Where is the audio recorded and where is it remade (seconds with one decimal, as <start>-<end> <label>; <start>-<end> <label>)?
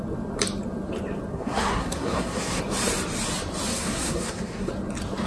0.0-1.3 recorded; 1.3-2.6 remade; 2.6-3.7 recorded; 3.7-4.7 remade; 4.7-5.3 recorded